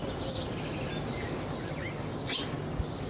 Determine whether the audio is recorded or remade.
recorded